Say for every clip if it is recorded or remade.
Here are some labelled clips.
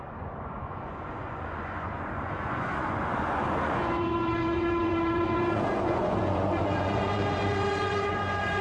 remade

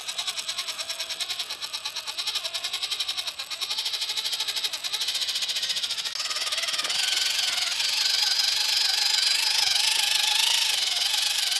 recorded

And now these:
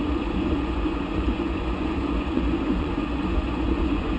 remade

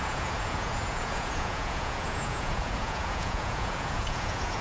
remade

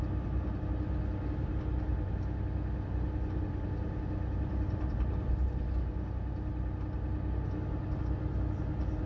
recorded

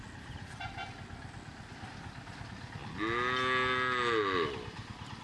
recorded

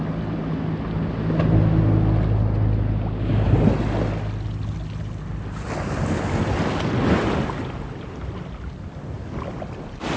recorded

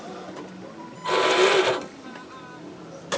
recorded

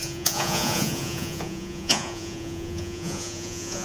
remade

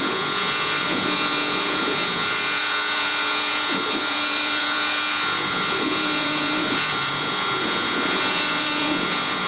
remade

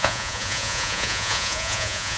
remade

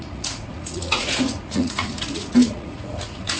remade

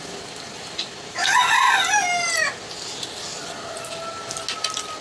recorded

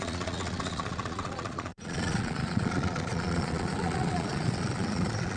remade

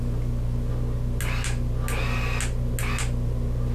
recorded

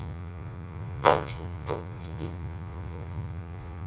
remade